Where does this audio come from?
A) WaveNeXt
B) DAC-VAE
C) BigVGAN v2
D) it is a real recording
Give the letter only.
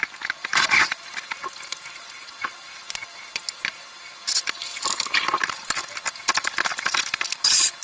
D